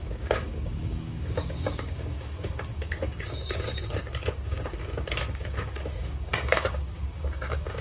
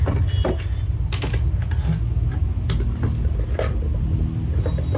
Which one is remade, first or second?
first